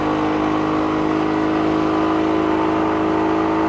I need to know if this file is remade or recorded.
recorded